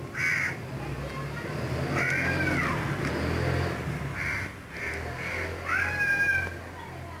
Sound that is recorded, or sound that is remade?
recorded